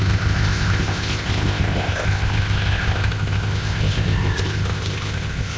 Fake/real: fake